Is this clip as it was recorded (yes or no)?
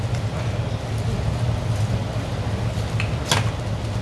yes